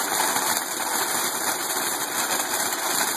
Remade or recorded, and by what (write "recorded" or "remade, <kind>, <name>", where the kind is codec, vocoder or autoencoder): recorded